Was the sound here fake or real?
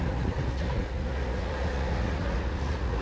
fake